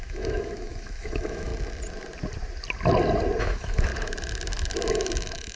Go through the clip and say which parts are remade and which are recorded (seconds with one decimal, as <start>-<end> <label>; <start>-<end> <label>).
0.0-1.5 remade; 1.5-3.4 recorded; 3.4-3.9 remade; 3.9-4.9 recorded; 4.9-5.6 remade